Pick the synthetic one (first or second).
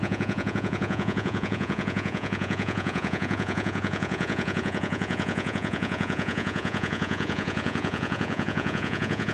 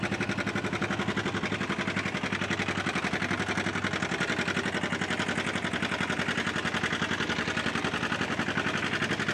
first